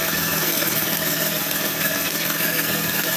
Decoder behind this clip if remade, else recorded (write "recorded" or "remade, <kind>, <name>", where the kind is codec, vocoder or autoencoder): remade, codec, SNAC